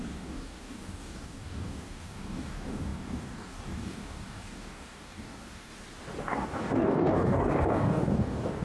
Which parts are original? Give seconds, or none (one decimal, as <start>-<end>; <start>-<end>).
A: 5.7-6.2